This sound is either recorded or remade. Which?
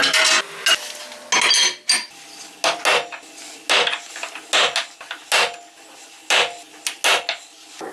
recorded